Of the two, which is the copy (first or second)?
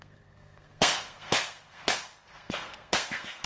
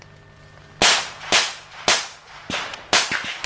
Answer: first